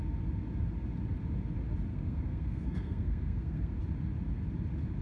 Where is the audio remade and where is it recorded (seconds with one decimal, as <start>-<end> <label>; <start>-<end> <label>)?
0.0-1.9 recorded; 1.9-3.8 remade; 3.8-5.0 recorded